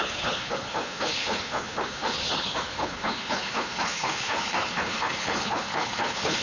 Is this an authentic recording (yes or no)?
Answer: no